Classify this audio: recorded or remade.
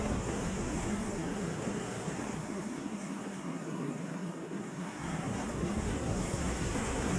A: remade